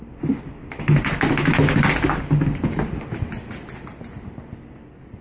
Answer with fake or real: real